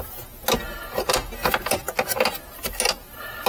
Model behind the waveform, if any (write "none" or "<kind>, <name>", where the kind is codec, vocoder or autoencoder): none